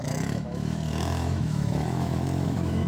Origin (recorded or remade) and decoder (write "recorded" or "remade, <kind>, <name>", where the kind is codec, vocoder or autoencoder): remade, autoencoder, DAC-VAE